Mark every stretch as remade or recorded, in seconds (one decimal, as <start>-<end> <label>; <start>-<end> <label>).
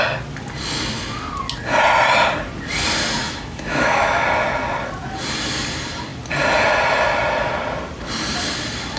0.0-3.2 recorded; 3.2-4.2 remade; 4.2-9.0 recorded